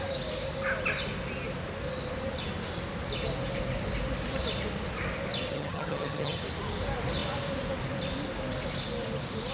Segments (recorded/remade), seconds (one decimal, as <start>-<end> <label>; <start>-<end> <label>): 0.0-5.5 recorded; 5.5-6.4 remade; 6.4-9.5 recorded